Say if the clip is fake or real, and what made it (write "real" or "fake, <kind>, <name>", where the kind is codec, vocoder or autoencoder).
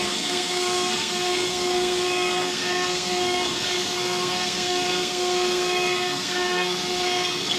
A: fake, codec, SNAC